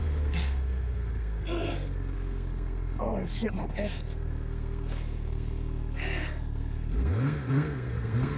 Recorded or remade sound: remade